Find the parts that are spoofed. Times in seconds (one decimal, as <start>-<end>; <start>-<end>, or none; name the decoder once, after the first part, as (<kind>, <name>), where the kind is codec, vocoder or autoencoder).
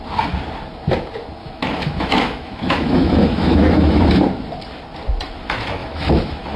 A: 1.4-4.0 (autoencoder, DAC-VAE); 5.8-6.6